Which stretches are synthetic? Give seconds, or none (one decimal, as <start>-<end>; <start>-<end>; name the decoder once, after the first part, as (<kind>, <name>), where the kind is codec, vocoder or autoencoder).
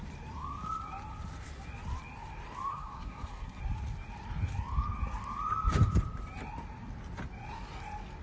2.7-3.6 (codec, SNAC)